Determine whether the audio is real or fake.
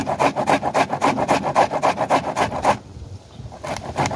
real